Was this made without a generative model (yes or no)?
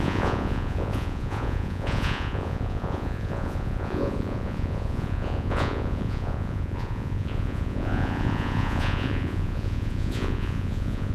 no